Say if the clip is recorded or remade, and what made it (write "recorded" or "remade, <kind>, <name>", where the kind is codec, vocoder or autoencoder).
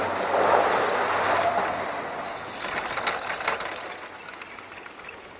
recorded